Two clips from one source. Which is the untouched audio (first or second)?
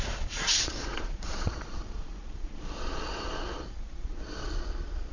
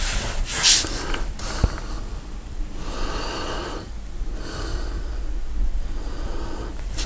second